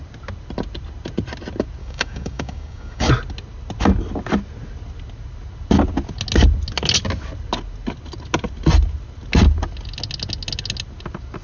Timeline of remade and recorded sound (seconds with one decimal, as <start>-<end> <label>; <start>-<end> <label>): 0.0-1.8 recorded; 1.8-3.1 remade; 3.1-11.4 recorded